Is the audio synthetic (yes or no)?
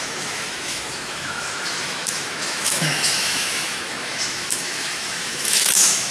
yes